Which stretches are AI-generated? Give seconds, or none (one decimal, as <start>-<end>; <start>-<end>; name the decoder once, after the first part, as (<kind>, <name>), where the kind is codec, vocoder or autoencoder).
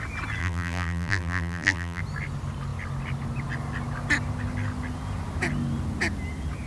0.4-2.0 (vocoder, BigVGAN v2)